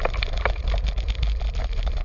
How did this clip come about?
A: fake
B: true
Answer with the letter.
A